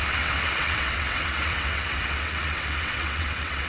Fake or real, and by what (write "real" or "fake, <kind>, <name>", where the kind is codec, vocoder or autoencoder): fake, vocoder, WaveNeXt